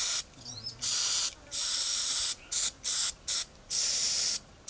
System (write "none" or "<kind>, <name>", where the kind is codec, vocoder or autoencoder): none